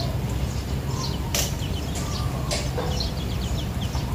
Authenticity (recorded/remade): recorded